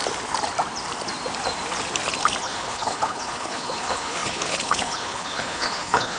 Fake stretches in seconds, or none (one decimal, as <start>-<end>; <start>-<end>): 2.4-6.2